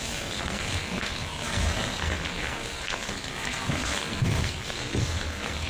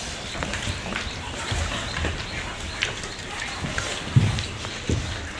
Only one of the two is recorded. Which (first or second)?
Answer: second